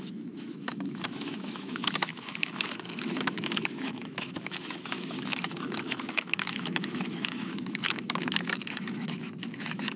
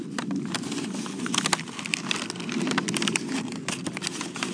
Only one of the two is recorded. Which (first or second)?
second